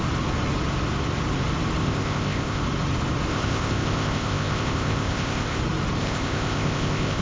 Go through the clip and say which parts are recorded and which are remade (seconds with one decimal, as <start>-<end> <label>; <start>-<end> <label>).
0.0-1.8 recorded; 1.8-2.6 remade; 2.6-3.3 recorded; 3.3-5.6 remade; 5.6-6.0 recorded; 6.0-7.2 remade

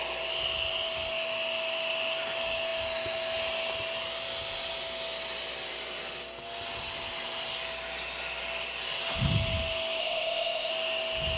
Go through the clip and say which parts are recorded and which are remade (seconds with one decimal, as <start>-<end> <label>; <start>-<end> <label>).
0.0-10.0 recorded; 10.0-10.7 remade; 10.7-11.4 recorded

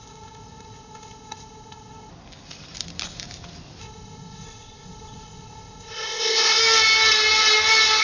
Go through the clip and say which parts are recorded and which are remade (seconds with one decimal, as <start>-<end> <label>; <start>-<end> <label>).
0.0-2.1 remade; 2.1-3.8 recorded; 3.8-6.6 remade; 6.6-8.0 recorded